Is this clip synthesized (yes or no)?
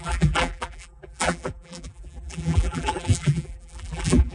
yes